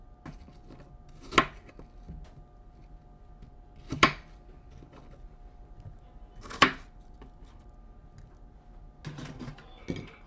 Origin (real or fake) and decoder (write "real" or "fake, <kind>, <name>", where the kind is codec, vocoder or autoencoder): real